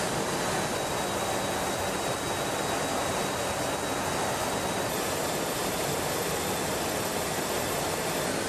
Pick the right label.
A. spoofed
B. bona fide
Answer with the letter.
B